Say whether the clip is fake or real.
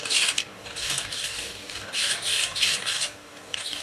fake